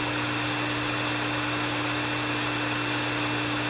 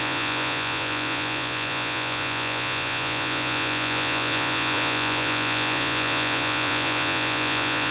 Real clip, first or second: first